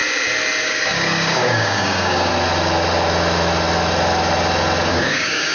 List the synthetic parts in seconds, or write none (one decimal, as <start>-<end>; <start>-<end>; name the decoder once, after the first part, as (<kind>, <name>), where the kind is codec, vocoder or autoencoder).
0.6-2.3 (codec, DAC); 4.9-5.5